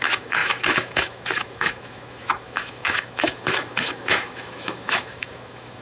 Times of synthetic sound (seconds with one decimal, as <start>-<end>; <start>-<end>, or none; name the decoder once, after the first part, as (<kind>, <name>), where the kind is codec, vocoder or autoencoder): 0.0-5.8 (autoencoder, DAC-VAE)